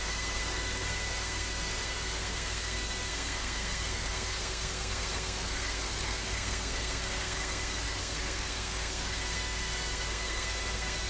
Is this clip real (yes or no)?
no